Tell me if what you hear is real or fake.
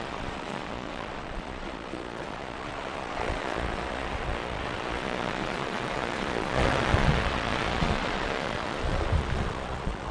fake